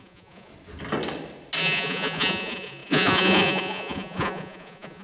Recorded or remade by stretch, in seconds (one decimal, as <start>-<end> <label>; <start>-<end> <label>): 0.0-0.5 remade; 0.5-1.6 recorded; 1.6-5.0 remade